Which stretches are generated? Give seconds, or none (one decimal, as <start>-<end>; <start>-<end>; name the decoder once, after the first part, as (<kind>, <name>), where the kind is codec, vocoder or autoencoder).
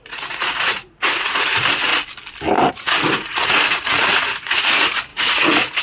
0.0-1.9 (vocoder, Vocos); 2.7-5.8